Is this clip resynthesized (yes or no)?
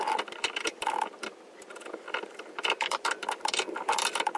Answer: yes